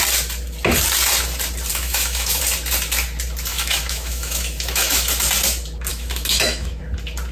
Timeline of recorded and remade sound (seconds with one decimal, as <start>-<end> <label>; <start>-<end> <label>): 0.0-1.7 recorded; 1.7-2.4 remade; 2.4-3.5 recorded; 3.5-5.1 remade; 5.1-5.9 recorded; 5.9-6.8 remade; 6.8-7.3 recorded